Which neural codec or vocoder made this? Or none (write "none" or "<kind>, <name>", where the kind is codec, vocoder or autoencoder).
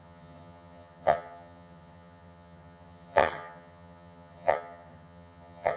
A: vocoder, HiFi-GAN